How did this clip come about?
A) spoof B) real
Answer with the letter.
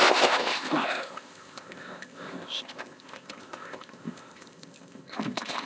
A